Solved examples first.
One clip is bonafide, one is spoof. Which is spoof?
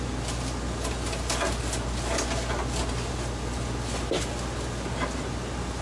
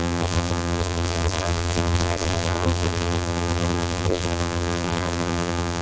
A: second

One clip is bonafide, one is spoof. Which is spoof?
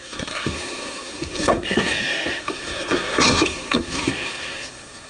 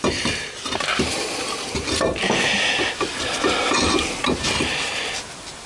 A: first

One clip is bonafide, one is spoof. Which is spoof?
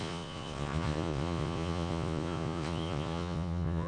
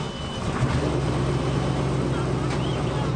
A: first